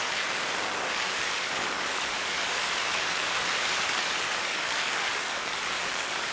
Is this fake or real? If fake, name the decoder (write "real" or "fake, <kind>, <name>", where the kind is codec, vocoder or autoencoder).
fake, codec, DAC